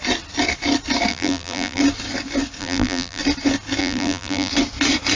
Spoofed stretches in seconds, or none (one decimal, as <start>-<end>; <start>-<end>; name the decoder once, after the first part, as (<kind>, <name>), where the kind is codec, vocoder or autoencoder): 1.1-1.8 (vocoder, BigVGAN v2); 2.6-3.2; 3.8-4.5